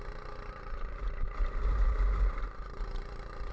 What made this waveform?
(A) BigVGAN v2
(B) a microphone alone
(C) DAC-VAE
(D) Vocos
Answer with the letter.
A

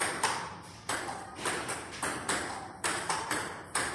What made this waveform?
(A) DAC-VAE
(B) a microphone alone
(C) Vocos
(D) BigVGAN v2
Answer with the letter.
D